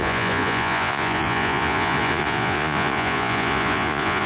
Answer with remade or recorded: remade